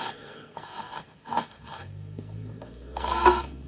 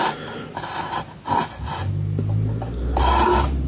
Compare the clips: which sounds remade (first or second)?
first